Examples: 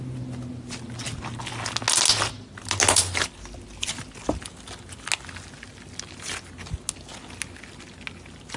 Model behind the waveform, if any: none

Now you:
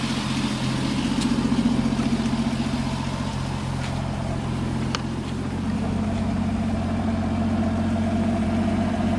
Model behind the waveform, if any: none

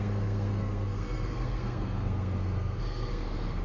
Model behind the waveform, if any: codec, SNAC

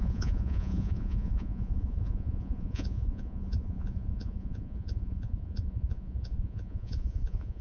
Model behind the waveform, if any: vocoder, Vocos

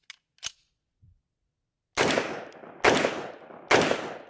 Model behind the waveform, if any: none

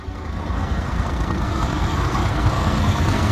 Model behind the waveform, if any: codec, SNAC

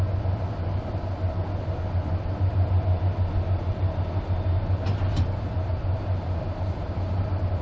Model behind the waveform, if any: none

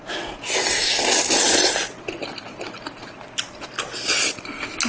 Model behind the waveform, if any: none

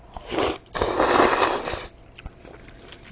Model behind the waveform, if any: none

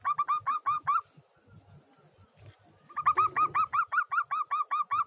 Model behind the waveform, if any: none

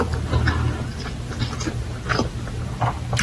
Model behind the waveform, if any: none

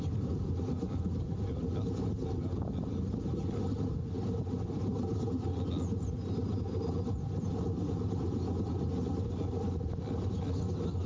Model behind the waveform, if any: none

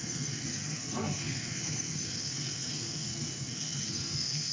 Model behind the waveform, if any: codec, SNAC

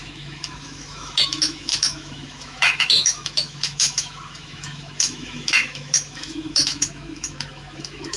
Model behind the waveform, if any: autoencoder, DAC-VAE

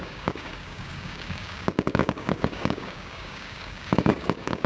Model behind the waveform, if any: codec, DAC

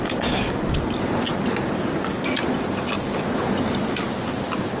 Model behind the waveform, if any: none